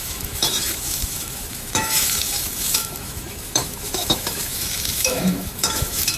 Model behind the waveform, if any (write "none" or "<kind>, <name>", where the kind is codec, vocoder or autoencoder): autoencoder, DAC-VAE